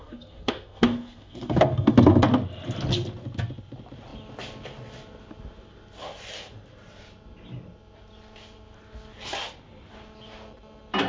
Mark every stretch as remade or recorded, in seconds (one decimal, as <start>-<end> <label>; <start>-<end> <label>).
0.0-2.2 remade; 2.2-11.1 recorded